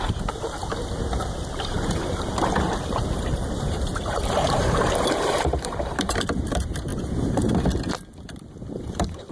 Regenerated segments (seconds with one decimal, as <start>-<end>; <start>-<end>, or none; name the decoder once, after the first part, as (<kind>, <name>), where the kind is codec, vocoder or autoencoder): 0.0-0.6 (vocoder, BigVGAN v2); 1.3-6.9; 8.7-9.3